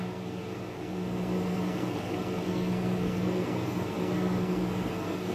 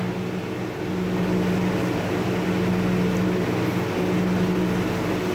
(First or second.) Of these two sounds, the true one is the second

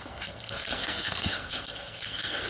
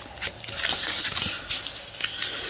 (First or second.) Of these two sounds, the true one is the second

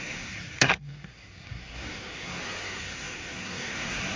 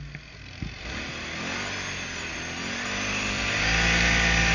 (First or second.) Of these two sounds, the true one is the second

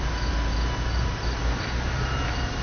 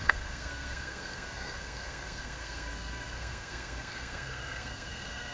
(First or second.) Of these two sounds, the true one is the first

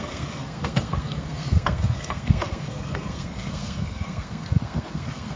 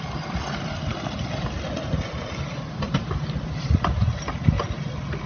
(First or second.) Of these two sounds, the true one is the second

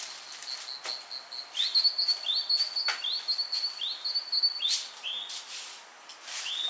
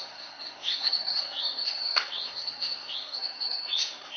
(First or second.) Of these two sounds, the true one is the first